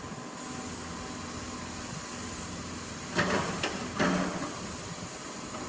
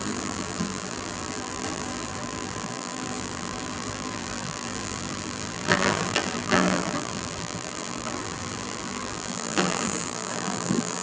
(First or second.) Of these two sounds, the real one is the first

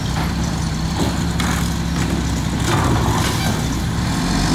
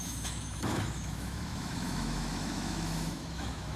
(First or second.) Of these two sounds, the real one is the first